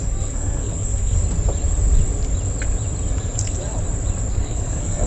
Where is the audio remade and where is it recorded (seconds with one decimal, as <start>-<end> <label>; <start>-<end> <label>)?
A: 0.0-1.2 remade; 1.2-4.3 recorded; 4.3-5.1 remade